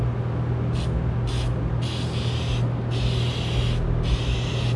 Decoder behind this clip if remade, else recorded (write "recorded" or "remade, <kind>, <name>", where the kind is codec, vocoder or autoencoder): recorded